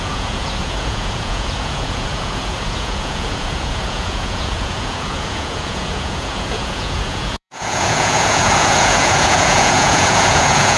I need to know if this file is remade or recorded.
remade